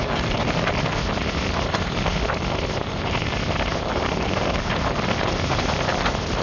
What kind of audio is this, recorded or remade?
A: recorded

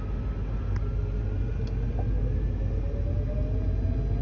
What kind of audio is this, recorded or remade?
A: recorded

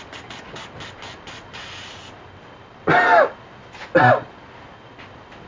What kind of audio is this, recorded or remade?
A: recorded